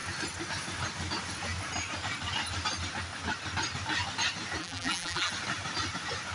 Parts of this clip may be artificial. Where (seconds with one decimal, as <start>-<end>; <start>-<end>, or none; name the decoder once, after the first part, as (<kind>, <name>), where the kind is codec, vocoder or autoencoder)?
4.6-5.3 (vocoder, BigVGAN v2)